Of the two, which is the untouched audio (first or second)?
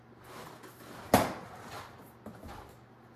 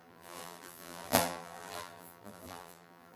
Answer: first